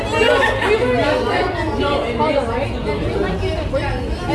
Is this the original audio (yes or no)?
yes